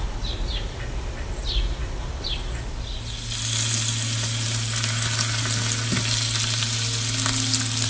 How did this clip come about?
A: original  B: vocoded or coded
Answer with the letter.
A